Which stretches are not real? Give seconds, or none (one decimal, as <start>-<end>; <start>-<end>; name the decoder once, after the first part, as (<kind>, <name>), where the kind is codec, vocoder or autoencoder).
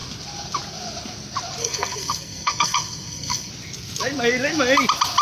1.6-3.5 (codec, SNAC)